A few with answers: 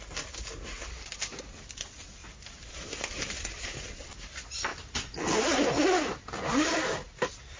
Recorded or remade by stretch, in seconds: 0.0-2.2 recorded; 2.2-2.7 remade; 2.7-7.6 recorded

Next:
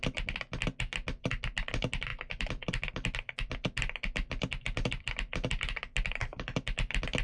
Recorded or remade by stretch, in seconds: 0.0-7.2 recorded

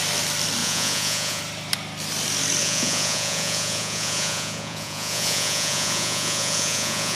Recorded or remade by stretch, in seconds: 0.0-0.6 recorded; 0.6-1.4 remade; 1.4-2.6 recorded; 2.6-7.2 remade

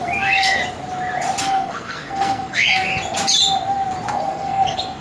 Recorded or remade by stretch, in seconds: 0.0-0.6 remade; 0.6-1.4 recorded; 1.4-2.9 remade; 2.9-4.1 recorded; 4.1-5.0 remade

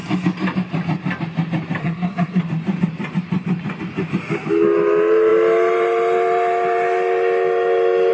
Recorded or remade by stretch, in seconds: 0.0-1.8 recorded; 1.8-2.4 remade; 2.4-8.1 recorded

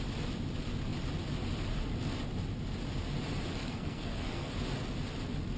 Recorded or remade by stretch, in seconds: 0.0-3.6 recorded; 3.6-4.5 remade; 4.5-5.6 recorded

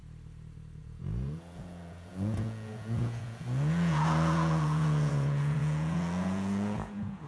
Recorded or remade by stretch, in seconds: 0.0-0.8 recorded; 0.8-7.3 remade

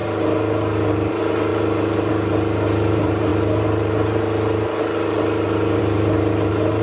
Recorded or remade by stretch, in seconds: 0.0-1.1 recorded; 1.1-6.8 remade